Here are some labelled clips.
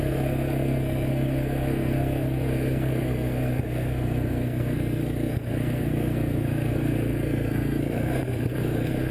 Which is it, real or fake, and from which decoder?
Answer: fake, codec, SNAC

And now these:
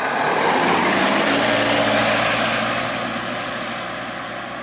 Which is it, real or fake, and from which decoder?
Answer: real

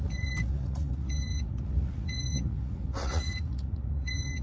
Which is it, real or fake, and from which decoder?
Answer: fake, vocoder, Vocos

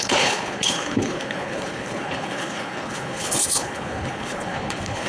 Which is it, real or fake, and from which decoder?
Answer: fake, codec, HILCodec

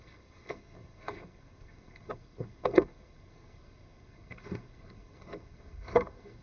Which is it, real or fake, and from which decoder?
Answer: fake, codec, SNAC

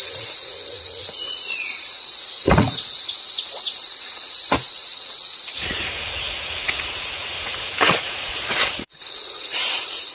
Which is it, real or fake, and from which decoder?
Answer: fake, vocoder, Vocos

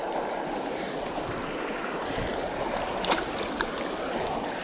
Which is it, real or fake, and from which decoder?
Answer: real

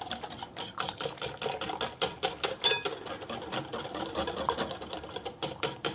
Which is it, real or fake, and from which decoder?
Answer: real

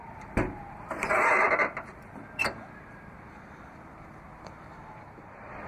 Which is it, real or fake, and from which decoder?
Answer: fake, vocoder, BigVGAN v2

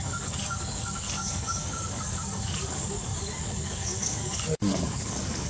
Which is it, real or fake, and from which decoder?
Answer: fake, codec, DAC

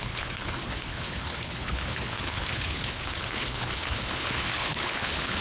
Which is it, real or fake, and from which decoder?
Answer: fake, codec, HILCodec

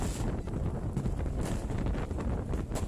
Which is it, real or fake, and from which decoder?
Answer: real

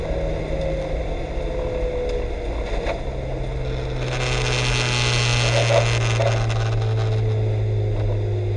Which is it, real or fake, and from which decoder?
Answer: real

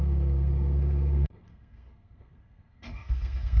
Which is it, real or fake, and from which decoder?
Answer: fake, codec, SNAC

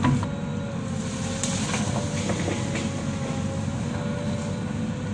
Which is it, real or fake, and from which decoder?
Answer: real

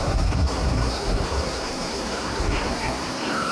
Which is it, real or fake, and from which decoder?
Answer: fake, codec, SNAC